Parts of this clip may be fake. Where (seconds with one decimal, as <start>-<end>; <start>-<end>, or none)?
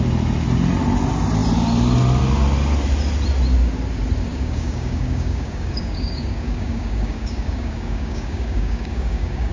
4.3-9.5